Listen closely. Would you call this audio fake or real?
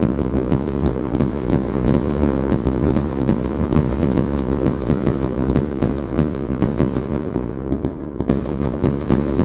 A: fake